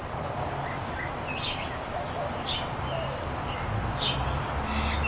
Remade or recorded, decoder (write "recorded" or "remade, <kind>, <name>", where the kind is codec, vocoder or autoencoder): recorded